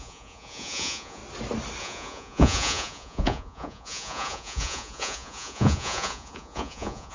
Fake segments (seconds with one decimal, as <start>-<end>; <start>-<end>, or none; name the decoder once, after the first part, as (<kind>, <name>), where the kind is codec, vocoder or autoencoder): 0.0-1.2 (vocoder, Vocos); 1.8-7.1